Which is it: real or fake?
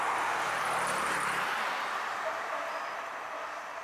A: real